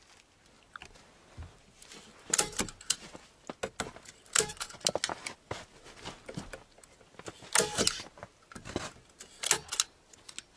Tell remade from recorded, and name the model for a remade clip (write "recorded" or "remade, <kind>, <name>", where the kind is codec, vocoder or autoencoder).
recorded